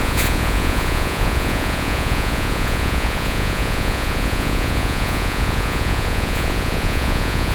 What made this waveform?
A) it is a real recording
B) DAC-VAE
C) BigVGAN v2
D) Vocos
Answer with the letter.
D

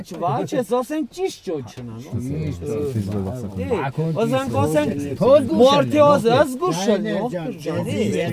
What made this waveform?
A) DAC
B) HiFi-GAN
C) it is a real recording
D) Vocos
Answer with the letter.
C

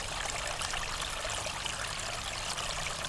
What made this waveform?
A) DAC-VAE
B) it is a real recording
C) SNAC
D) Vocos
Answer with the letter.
B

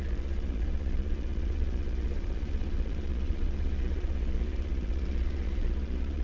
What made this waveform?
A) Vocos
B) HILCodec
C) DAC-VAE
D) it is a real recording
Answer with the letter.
A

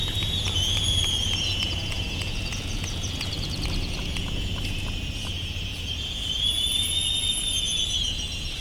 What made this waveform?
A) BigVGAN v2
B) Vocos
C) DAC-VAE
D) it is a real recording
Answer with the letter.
B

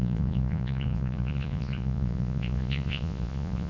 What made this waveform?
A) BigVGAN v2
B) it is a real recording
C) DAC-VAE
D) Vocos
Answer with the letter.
D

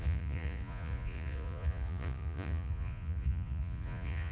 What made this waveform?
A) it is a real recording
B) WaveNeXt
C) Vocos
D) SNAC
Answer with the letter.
C